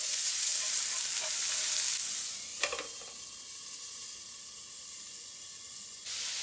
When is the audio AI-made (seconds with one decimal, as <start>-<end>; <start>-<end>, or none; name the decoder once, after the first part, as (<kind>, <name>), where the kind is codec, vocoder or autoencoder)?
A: 0.0-0.5 (vocoder, Vocos); 2.0-2.5; 5.0-6.4